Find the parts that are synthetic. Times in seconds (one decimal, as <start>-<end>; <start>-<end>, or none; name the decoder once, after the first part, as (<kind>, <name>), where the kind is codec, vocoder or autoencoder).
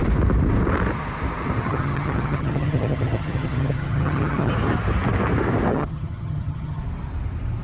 1.6-4.5 (vocoder, HiFi-GAN); 5.7-6.8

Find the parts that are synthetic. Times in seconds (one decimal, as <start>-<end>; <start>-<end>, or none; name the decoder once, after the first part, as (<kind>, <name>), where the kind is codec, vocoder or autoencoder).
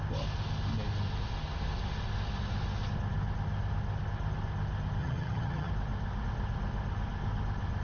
5.0-5.7 (vocoder, HiFi-GAN)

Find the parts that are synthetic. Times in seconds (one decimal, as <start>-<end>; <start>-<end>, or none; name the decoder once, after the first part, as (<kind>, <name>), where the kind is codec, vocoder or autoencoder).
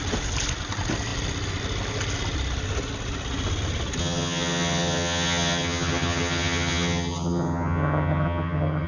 4.0-8.9 (vocoder, HiFi-GAN)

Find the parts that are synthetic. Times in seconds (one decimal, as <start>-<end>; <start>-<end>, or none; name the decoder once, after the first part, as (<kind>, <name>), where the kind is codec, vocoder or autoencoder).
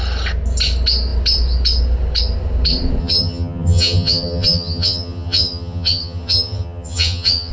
3.0-7.5 (vocoder, HiFi-GAN)